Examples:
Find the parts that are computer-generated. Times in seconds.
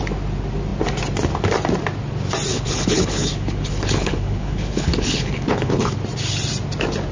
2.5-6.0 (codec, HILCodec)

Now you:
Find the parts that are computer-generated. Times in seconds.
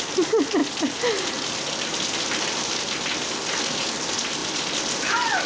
none